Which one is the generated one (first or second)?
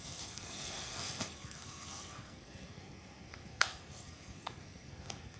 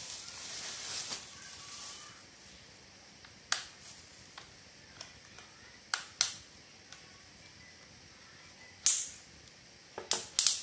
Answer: first